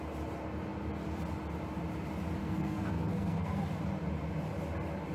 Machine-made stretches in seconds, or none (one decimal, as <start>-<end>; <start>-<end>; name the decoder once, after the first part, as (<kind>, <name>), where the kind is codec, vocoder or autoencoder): 2.4-3.6 (codec, SNAC)